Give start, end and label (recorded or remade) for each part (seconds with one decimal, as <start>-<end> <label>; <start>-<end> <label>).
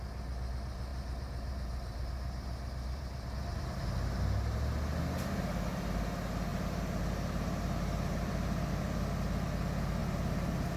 0.0-0.9 recorded; 0.9-3.3 remade; 3.3-6.5 recorded; 6.5-8.7 remade; 8.7-10.0 recorded; 10.0-10.8 remade